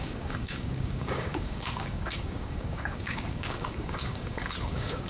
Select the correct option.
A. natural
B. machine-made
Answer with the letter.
B